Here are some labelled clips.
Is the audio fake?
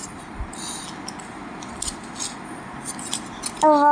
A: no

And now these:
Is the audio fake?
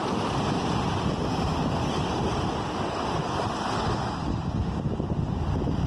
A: no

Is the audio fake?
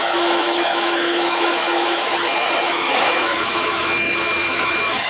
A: yes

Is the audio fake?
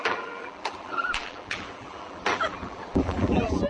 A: yes